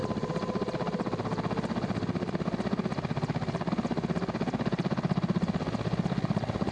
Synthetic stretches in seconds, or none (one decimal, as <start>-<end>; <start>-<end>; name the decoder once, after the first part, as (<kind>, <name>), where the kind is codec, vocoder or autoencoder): none